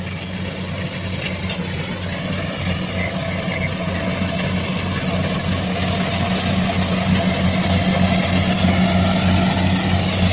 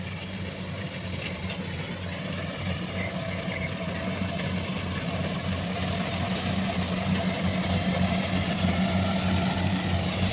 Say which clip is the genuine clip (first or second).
first